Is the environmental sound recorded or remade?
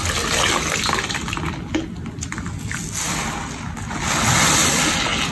recorded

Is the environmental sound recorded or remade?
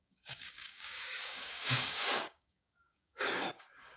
remade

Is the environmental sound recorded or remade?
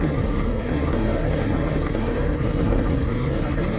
remade